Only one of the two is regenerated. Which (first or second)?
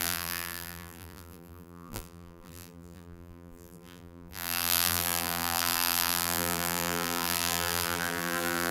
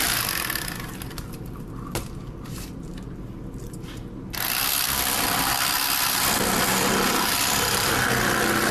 first